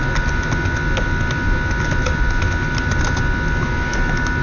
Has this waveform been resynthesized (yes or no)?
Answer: no